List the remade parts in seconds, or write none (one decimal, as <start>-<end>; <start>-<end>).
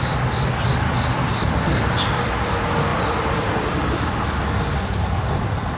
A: 1.3-2.5; 2.9-4.3